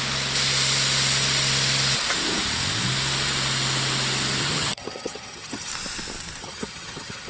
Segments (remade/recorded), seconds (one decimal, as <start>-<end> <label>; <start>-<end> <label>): 0.0-4.4 recorded; 4.4-5.7 remade; 5.7-6.4 recorded; 6.4-7.3 remade